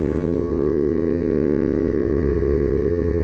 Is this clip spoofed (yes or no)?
yes